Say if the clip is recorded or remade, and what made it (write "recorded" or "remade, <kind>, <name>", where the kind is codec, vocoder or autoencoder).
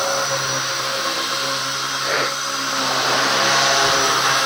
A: recorded